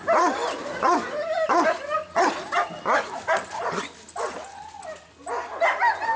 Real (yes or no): yes